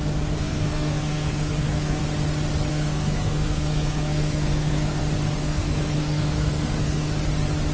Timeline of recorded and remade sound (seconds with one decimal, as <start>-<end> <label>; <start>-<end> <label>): 0.0-0.4 recorded; 0.4-2.0 remade; 2.0-2.7 recorded; 2.7-5.0 remade; 5.0-5.4 recorded; 5.4-7.1 remade; 7.1-7.7 recorded